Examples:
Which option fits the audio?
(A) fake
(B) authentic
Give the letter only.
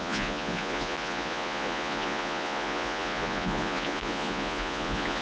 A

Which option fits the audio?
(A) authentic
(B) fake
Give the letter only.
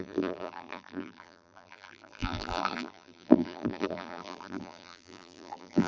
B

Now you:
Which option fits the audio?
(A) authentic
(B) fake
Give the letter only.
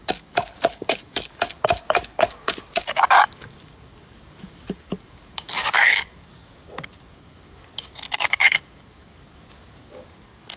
B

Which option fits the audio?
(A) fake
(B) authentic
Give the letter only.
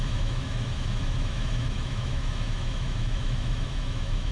A